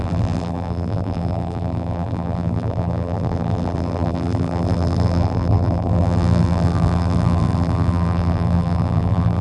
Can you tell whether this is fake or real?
fake